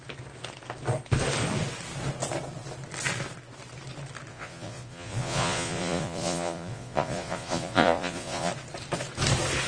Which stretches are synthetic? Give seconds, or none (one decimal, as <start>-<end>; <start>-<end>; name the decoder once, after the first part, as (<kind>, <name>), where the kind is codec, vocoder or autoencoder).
4.3-8.5 (vocoder, Vocos)